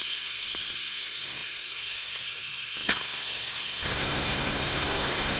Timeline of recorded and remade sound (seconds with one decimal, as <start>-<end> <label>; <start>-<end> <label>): 0.0-5.4 remade

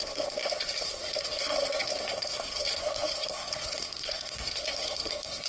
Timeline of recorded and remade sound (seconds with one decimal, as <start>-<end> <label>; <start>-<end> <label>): 0.0-5.5 remade

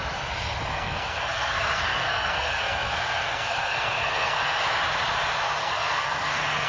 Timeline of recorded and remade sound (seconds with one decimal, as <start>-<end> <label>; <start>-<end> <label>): 0.0-0.7 recorded; 0.7-4.6 remade; 4.6-5.6 recorded; 5.6-6.7 remade

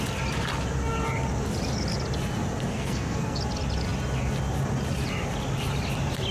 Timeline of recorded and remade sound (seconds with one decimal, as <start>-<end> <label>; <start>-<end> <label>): 0.0-2.7 recorded; 2.7-3.4 remade; 3.4-6.3 recorded

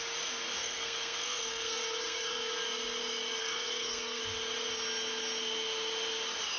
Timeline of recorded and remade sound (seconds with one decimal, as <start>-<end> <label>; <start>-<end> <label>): 0.0-0.6 recorded; 0.6-2.5 remade; 2.5-3.4 recorded; 3.4-4.2 remade; 4.2-6.6 recorded

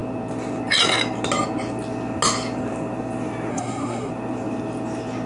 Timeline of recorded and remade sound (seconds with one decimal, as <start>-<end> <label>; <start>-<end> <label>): 0.0-3.5 recorded; 3.5-4.1 remade; 4.1-5.3 recorded